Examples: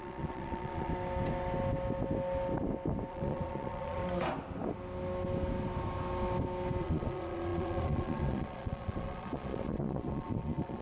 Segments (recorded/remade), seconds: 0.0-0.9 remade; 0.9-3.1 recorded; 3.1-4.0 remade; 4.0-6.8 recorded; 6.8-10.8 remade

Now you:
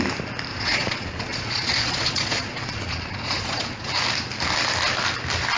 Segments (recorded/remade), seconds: 0.0-0.5 recorded; 0.5-3.9 remade; 3.9-5.6 recorded

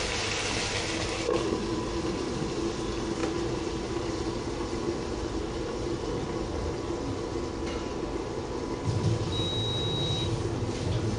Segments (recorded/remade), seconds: 0.0-11.2 recorded

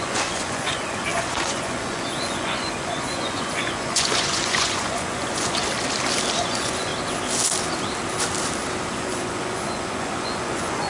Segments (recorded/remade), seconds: 0.0-5.6 remade; 5.6-6.4 recorded; 6.4-6.9 remade; 6.9-8.9 recorded; 8.9-10.9 remade

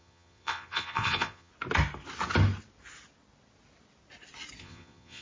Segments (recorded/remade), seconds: 0.0-1.5 remade; 1.5-4.6 recorded; 4.6-5.2 remade

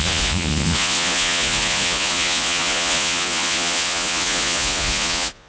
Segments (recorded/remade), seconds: 0.0-5.5 remade

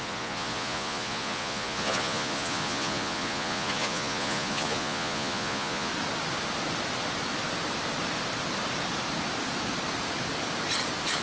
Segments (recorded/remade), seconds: 0.0-5.9 remade; 5.9-11.2 recorded